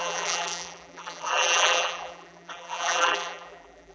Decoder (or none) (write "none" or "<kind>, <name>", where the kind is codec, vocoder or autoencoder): vocoder, BigVGAN v2